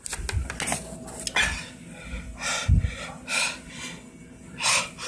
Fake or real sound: real